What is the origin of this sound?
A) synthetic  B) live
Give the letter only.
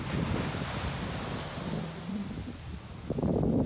B